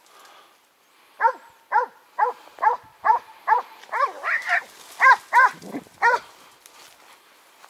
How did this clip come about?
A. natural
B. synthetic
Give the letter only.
A